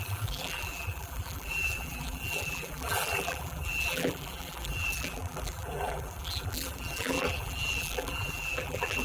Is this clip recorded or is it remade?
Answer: remade